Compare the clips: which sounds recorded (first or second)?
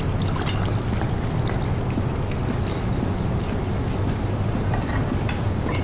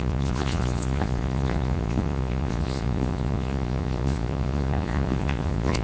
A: first